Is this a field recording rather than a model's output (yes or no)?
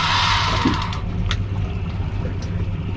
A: yes